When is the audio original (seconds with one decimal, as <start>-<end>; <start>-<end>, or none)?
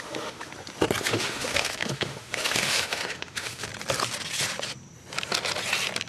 0.5-1.0; 3.7-6.1